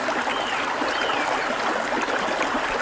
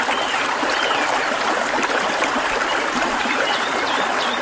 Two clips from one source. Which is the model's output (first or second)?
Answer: second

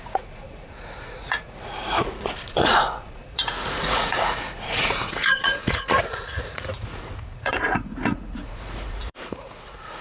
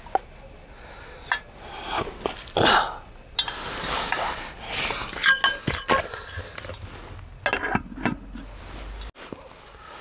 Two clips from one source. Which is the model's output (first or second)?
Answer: first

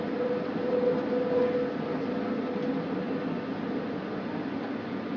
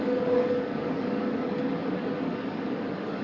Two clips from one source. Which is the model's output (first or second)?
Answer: second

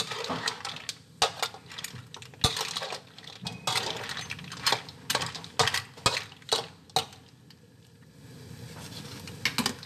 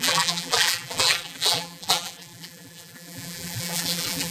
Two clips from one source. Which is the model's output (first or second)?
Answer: second